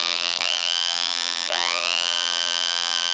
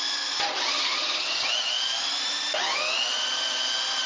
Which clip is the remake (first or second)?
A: first